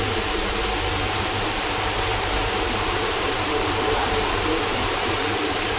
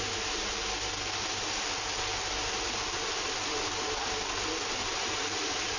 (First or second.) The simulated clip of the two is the first